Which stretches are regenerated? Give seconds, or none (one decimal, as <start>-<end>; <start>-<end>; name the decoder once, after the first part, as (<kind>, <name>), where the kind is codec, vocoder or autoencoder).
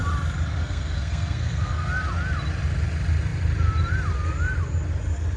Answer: 0.5-1.9 (codec, SNAC)